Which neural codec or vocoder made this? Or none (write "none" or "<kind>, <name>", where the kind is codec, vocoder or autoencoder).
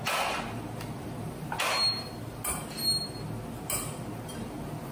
none